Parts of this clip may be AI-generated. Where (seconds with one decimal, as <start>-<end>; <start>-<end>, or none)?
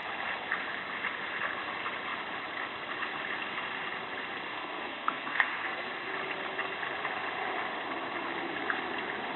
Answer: 4.5-5.9